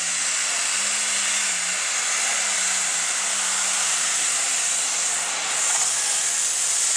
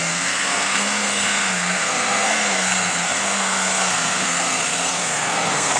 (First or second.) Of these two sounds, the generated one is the second